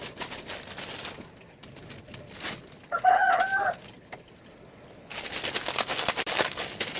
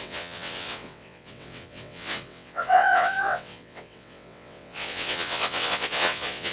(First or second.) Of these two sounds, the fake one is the second